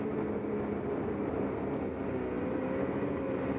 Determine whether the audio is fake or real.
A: real